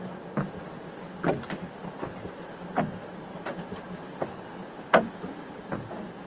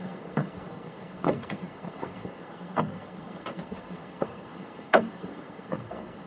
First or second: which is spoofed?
second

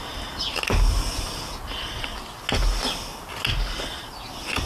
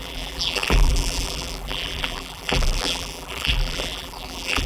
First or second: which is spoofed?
second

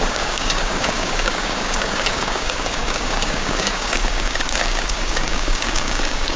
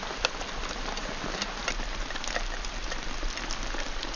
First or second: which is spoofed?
first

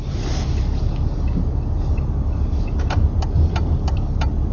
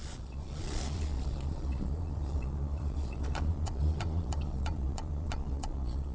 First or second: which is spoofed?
second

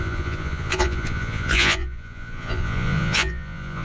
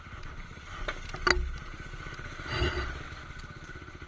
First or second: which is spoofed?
first